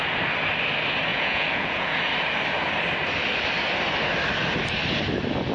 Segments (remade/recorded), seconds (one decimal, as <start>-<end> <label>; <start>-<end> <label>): 0.0-1.1 recorded; 1.1-2.0 remade; 2.0-5.5 recorded